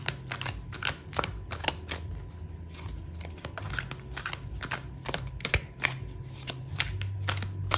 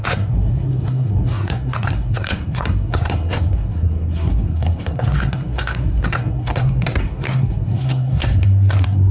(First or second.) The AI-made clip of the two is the second